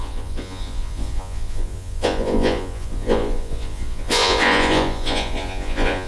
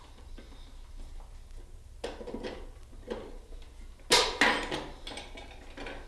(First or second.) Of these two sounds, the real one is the second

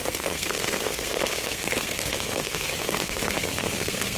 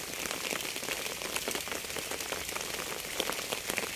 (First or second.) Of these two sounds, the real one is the second